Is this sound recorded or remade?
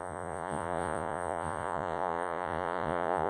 remade